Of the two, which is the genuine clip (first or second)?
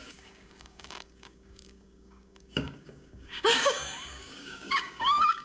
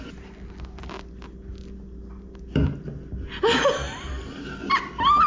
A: second